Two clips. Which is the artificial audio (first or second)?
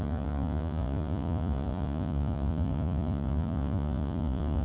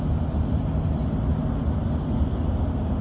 first